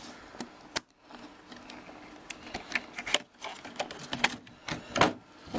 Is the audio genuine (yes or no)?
yes